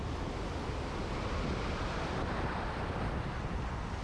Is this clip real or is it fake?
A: fake